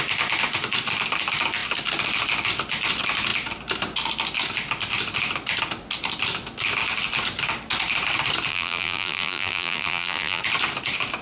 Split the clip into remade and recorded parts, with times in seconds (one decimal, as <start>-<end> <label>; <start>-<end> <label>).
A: 0.0-8.5 recorded; 8.5-10.4 remade; 10.4-11.2 recorded